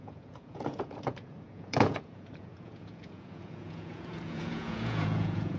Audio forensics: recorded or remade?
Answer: remade